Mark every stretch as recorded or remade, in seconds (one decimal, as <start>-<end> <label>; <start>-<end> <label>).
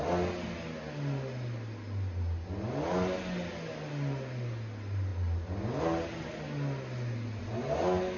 0.0-8.2 recorded